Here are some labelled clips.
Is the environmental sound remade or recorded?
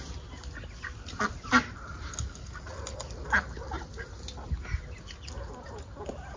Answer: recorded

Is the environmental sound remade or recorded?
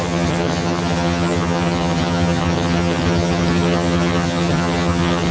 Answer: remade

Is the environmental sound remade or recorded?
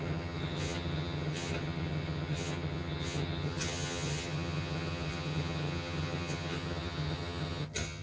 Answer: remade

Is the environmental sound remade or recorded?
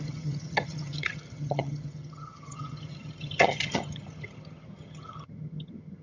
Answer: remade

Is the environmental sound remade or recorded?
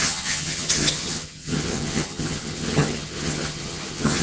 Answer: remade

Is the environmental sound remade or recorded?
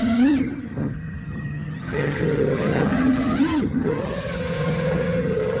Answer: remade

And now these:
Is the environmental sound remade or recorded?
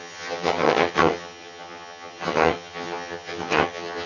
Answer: remade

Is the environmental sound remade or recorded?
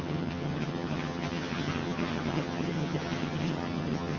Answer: remade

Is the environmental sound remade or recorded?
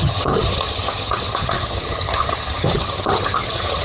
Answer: remade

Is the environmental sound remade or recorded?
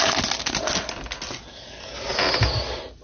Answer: recorded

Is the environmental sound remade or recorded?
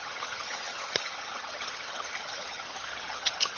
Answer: remade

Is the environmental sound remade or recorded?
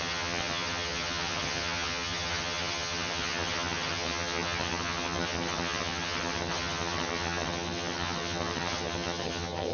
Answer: remade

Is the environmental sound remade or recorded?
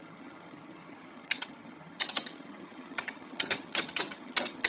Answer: remade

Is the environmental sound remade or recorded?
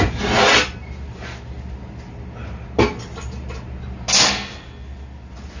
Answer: recorded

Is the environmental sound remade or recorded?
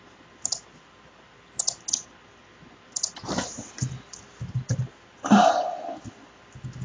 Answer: recorded